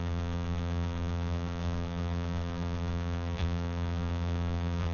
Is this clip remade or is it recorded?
remade